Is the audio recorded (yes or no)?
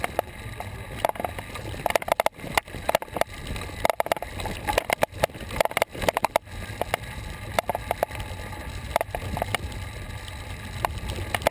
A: yes